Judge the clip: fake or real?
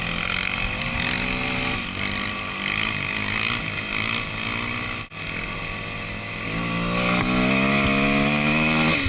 real